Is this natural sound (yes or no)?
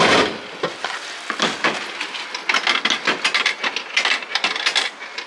yes